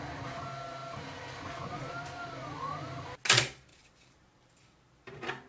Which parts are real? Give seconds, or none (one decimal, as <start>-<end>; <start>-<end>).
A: 0.0-3.7